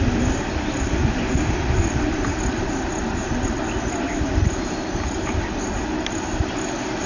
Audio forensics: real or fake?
real